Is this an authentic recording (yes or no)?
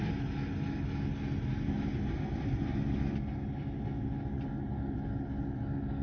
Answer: yes